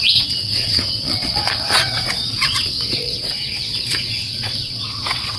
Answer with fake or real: fake